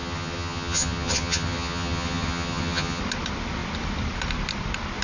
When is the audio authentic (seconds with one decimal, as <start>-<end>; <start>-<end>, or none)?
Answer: 3.0-5.0